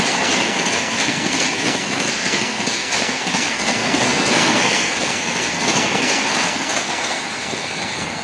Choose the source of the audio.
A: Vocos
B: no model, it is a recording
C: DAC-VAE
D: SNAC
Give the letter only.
D